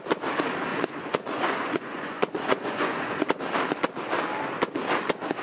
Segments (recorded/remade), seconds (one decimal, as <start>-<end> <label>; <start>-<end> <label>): 0.0-0.7 recorded; 0.7-3.4 remade; 3.4-5.4 recorded